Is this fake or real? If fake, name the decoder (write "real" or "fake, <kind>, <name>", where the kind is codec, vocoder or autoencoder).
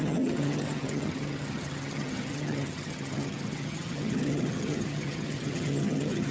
fake, vocoder, HiFi-GAN